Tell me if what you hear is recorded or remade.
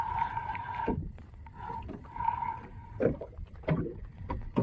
remade